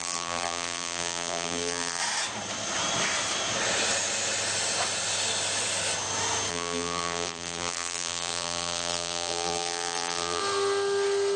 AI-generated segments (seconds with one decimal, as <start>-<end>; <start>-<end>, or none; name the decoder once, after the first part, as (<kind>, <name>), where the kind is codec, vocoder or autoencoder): 0.0-2.0 (vocoder, BigVGAN v2); 6.5-10.4